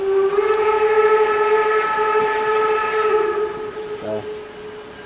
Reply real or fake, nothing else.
real